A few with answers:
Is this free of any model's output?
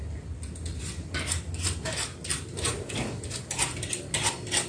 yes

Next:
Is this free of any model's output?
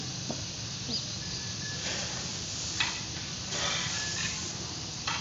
no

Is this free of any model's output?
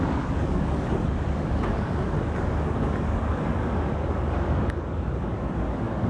no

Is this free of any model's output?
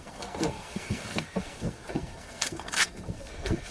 no